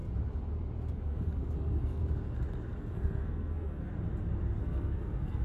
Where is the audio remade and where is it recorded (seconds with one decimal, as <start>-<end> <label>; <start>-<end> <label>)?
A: 0.0-0.9 recorded; 0.9-2.0 remade; 2.0-2.8 recorded; 2.8-3.9 remade; 3.9-4.6 recorded; 4.6-5.4 remade